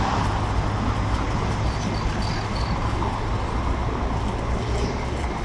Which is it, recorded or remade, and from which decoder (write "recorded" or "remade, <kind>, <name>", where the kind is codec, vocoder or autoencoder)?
recorded